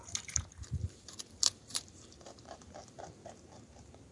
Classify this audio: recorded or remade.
remade